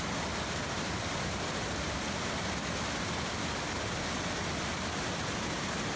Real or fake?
real